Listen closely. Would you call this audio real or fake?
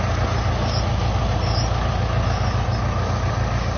real